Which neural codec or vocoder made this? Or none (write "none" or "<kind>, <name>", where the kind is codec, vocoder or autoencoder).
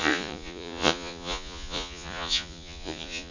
vocoder, Vocos